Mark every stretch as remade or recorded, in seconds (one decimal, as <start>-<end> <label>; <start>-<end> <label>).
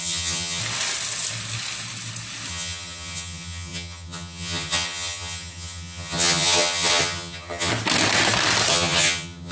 0.0-0.6 remade; 0.6-2.5 recorded; 2.5-7.7 remade; 7.7-8.7 recorded; 8.7-9.5 remade